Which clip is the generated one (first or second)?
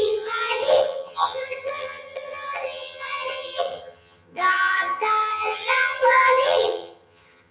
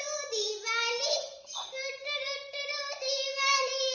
first